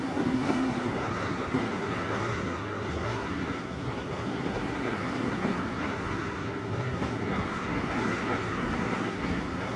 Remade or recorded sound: remade